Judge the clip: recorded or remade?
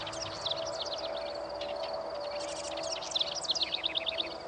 recorded